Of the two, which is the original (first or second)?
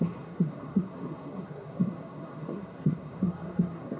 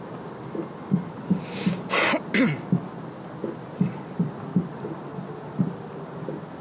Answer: second